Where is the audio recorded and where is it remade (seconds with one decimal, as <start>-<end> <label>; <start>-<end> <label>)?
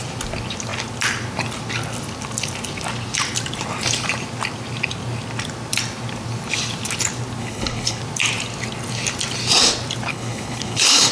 0.0-7.4 recorded; 7.4-8.0 remade; 8.0-10.1 recorded; 10.1-11.1 remade